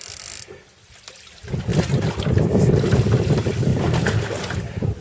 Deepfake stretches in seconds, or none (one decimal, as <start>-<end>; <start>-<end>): 3.7-5.0